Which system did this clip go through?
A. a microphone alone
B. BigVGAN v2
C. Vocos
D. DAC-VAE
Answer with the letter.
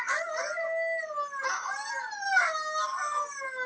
A